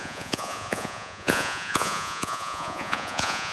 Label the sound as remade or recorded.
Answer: remade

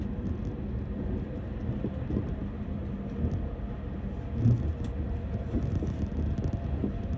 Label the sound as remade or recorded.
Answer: recorded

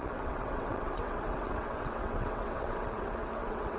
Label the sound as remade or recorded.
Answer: remade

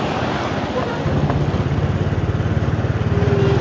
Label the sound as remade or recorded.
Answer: recorded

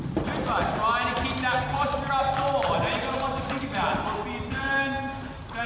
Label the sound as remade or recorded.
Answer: recorded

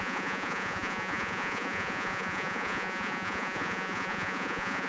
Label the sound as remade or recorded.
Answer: remade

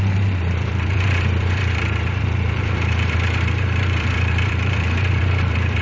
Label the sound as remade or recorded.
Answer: remade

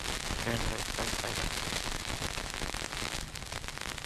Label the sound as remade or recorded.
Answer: recorded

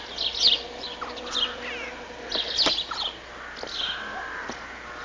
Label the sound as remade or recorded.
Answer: recorded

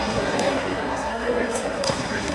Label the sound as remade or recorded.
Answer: remade